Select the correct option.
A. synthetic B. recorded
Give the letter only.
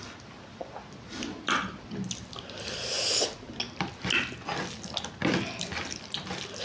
B